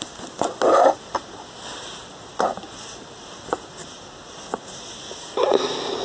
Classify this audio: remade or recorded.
recorded